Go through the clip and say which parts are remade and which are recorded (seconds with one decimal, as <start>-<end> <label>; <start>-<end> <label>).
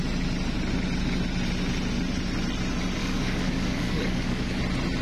0.0-3.0 recorded; 3.0-4.6 remade; 4.6-5.0 recorded